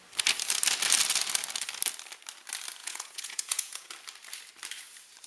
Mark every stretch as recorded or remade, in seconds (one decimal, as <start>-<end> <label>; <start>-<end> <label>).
0.0-2.8 recorded; 2.8-3.9 remade; 3.9-5.3 recorded

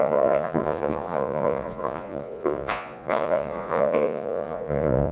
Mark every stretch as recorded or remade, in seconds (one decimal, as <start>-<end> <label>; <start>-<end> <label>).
0.0-5.1 remade